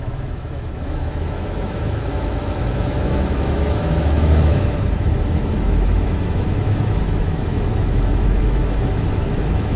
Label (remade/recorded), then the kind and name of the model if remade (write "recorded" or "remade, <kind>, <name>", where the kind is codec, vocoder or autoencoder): remade, autoencoder, DAC-VAE